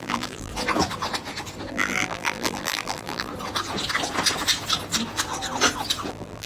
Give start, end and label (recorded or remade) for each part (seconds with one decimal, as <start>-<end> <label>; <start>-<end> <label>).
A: 0.0-0.5 remade; 0.5-1.7 recorded; 1.7-3.3 remade; 3.3-6.1 recorded; 6.1-6.5 remade